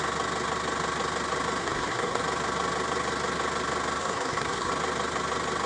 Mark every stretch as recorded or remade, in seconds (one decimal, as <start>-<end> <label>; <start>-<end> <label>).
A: 0.0-1.6 recorded; 1.6-2.2 remade; 2.2-4.0 recorded; 4.0-4.7 remade; 4.7-5.7 recorded